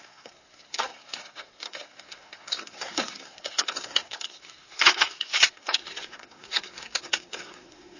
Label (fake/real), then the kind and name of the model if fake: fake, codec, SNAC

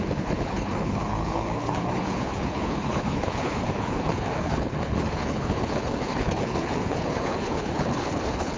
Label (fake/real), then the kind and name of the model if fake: fake, codec, HILCodec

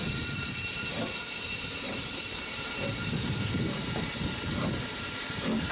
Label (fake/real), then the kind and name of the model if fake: fake, vocoder, BigVGAN v2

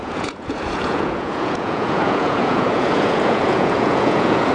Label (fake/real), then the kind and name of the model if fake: fake, vocoder, Vocos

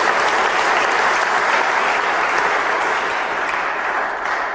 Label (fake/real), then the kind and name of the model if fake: real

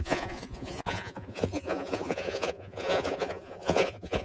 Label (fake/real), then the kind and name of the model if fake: fake, vocoder, Vocos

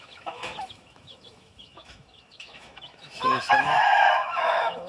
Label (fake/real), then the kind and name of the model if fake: fake, autoencoder, DAC-VAE